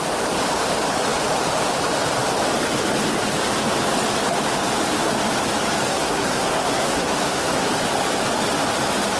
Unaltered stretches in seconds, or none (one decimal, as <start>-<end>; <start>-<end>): 0.0-5.9; 7.7-9.2